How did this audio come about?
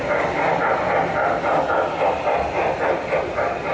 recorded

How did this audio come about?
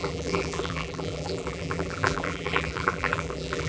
remade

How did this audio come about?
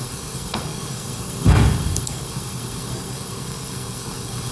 remade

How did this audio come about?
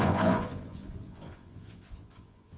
remade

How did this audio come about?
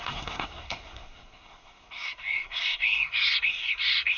remade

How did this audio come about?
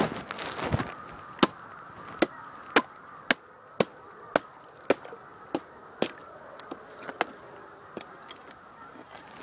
recorded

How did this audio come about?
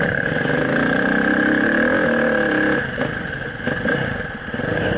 recorded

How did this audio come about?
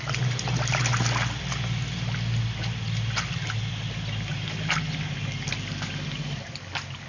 recorded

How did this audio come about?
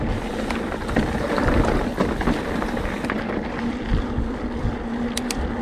remade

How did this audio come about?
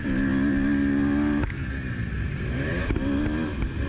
recorded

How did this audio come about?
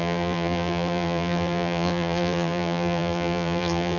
remade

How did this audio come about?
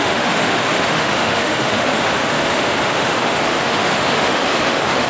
remade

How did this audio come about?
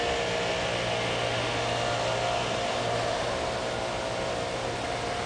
recorded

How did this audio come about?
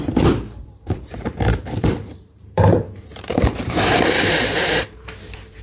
remade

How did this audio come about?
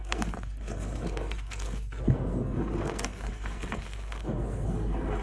remade